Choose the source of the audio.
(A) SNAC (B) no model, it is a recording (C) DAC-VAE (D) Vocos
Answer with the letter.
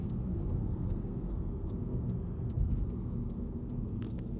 A